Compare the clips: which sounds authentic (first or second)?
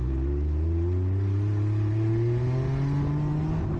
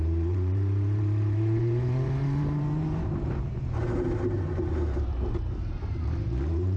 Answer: first